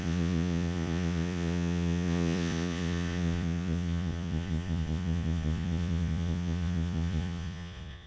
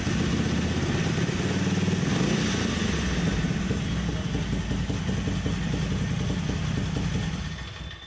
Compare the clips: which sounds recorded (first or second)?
second